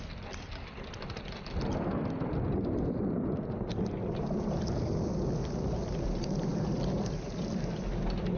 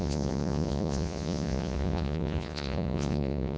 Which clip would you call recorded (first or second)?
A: first